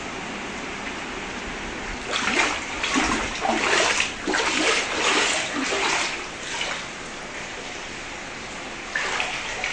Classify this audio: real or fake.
real